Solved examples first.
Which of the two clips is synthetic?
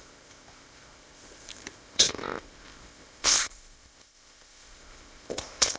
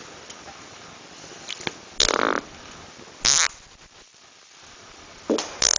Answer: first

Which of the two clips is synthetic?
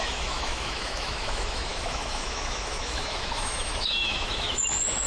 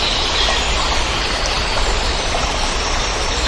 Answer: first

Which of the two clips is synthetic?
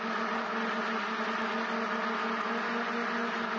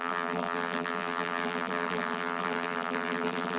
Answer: second